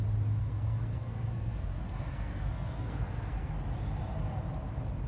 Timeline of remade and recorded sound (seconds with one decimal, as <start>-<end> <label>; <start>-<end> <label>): 0.0-0.4 recorded; 0.4-3.5 remade; 3.5-5.1 recorded